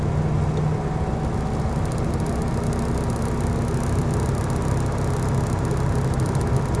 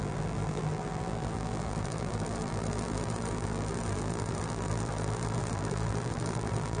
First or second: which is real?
first